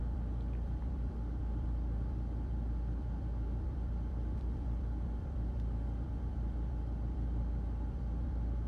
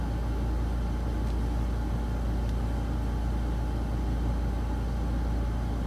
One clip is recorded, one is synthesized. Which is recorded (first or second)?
second